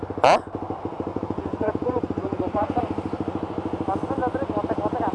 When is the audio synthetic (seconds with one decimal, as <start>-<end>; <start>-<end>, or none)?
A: 1.1-2.8